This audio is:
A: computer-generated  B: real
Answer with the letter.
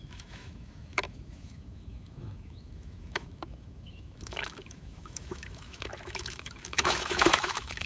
A